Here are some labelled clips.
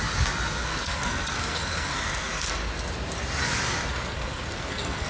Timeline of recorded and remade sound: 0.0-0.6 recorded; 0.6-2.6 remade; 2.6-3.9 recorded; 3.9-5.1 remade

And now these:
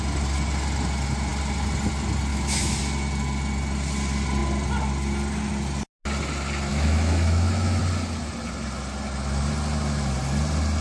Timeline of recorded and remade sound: 0.0-2.3 recorded; 2.3-2.8 remade; 2.8-6.7 recorded; 6.7-7.8 remade; 7.8-10.8 recorded

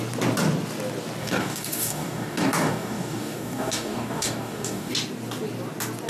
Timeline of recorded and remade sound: 0.0-1.2 recorded; 1.2-4.9 remade; 4.9-6.1 recorded